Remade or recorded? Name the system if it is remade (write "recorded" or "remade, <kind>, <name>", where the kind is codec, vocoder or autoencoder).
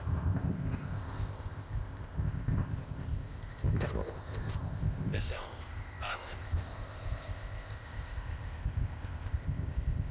remade, codec, ZipCodec